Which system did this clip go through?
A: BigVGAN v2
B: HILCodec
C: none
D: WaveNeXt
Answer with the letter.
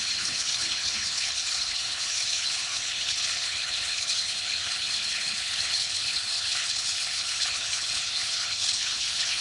B